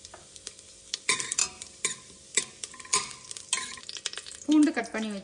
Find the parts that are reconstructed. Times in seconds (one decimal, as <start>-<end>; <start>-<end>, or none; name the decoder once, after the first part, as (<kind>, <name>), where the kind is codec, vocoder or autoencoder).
none